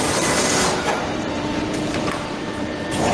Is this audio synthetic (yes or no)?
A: yes